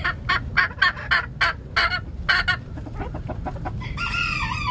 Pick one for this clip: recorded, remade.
recorded